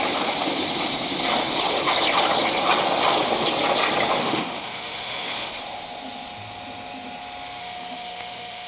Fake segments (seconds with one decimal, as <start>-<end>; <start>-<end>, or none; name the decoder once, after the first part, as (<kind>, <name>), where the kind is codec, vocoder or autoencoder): 4.2-5.6 (autoencoder, DAC-VAE); 7.6-8.7